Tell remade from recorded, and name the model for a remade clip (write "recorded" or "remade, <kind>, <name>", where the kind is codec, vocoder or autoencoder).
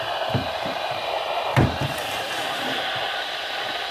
remade, vocoder, BigVGAN v2